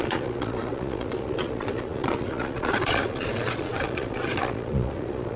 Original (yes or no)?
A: no